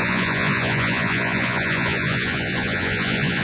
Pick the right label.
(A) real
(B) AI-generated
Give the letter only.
B